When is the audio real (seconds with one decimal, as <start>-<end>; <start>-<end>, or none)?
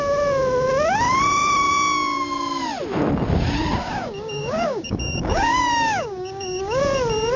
0.0-3.8; 6.8-7.4